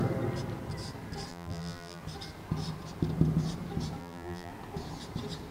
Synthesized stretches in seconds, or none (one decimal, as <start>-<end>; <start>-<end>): 1.3-2.0; 4.0-4.5